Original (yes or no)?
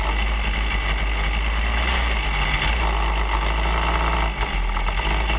yes